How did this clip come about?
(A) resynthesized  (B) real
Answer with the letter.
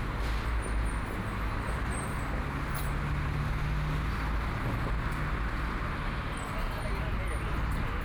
B